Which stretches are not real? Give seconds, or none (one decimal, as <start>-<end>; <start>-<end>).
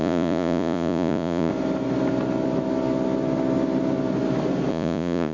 0.0-1.5; 4.7-5.3